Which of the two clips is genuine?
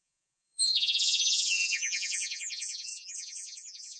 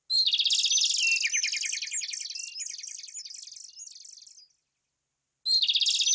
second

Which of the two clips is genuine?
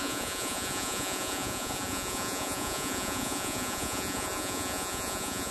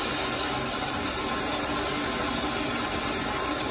second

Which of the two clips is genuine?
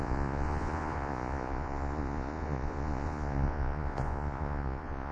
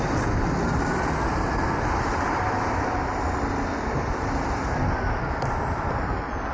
second